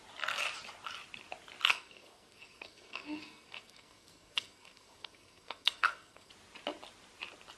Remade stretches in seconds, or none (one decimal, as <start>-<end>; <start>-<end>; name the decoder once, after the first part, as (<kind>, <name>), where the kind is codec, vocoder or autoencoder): 1.7-6.3 (codec, SNAC)